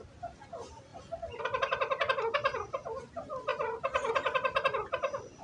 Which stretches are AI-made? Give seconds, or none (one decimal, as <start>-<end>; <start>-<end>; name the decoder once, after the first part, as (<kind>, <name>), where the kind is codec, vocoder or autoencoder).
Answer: none